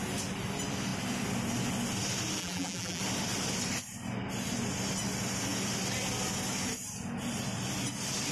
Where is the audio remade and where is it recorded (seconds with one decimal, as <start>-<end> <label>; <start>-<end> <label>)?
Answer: 0.0-2.4 recorded; 2.4-3.0 remade; 3.0-8.3 recorded